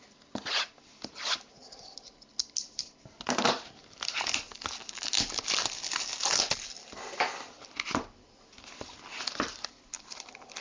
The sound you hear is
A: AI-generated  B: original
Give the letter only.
B